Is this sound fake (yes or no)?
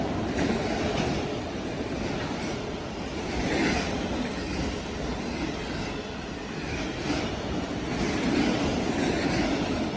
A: no